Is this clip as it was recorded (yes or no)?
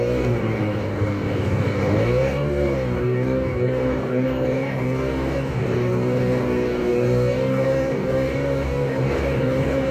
no